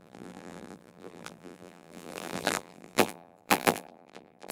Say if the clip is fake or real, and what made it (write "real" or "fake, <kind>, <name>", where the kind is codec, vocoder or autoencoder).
fake, vocoder, BigVGAN v2